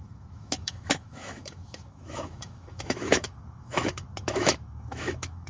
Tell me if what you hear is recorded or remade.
remade